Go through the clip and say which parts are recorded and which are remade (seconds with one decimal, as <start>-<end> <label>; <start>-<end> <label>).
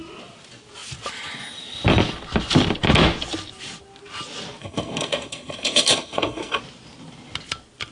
0.0-4.6 recorded; 4.6-6.6 remade; 6.6-7.9 recorded